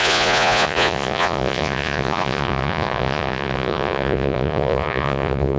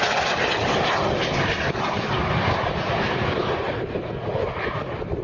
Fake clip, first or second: first